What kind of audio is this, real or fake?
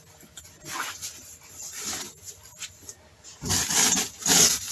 real